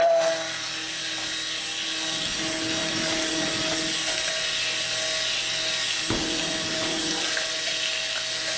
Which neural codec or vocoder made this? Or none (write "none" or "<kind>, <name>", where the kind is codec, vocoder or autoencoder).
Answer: none